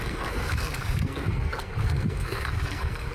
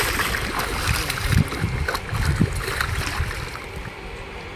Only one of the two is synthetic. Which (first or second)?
first